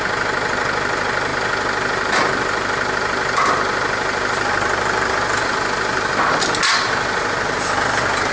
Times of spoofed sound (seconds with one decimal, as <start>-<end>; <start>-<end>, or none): none